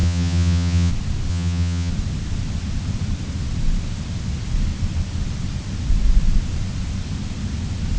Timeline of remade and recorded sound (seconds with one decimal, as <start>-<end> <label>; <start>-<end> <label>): 0.0-0.9 remade; 0.9-1.3 recorded; 1.3-1.9 remade; 1.9-8.0 recorded